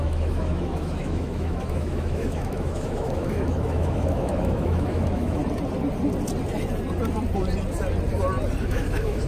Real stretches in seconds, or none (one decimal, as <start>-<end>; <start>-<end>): 5.4-8.6